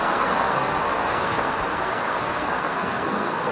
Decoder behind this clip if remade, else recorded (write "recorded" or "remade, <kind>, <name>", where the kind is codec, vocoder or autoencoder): remade, codec, SNAC